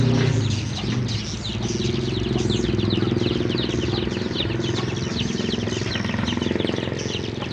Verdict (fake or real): real